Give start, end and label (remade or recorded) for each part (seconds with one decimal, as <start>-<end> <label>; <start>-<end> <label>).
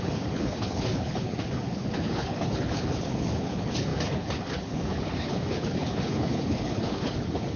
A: 0.0-7.6 remade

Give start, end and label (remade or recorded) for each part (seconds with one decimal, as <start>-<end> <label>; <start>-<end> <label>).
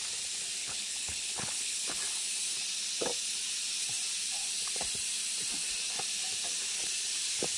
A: 0.0-0.6 recorded; 0.6-2.0 remade; 2.0-7.6 recorded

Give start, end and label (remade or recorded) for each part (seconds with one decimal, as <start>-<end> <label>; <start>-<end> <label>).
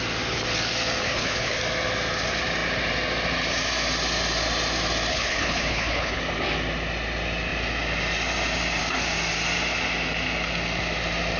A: 0.0-1.0 recorded; 1.0-1.6 remade; 1.6-5.1 recorded; 5.1-6.2 remade; 6.2-11.4 recorded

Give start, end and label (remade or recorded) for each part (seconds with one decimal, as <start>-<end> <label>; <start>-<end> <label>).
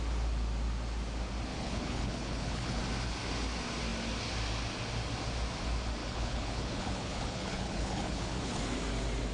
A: 0.0-1.5 recorded; 1.5-2.8 remade; 2.8-6.0 recorded; 6.0-8.6 remade; 8.6-9.3 recorded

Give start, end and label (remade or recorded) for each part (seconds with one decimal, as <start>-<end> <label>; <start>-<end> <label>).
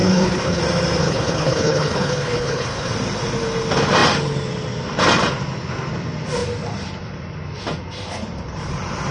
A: 0.0-0.6 remade; 0.6-1.0 recorded; 1.0-2.9 remade; 2.9-9.1 recorded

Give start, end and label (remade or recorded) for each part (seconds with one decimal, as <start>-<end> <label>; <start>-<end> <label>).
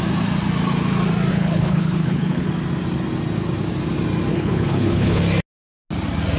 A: 0.0-1.3 recorded; 1.3-2.5 remade; 2.5-4.3 recorded; 4.3-5.2 remade; 5.2-6.4 recorded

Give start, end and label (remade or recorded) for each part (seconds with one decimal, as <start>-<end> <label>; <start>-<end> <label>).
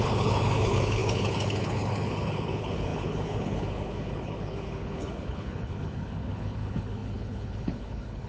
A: 0.0-8.3 remade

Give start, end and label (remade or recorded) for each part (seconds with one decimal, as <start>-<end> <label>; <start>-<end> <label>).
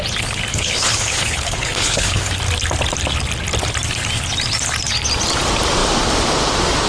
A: 0.0-0.5 recorded; 0.5-2.3 remade; 2.3-6.9 recorded